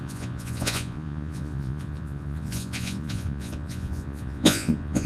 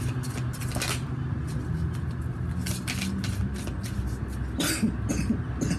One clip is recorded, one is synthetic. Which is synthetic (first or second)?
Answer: first